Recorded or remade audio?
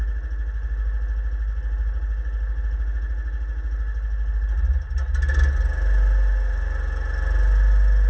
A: recorded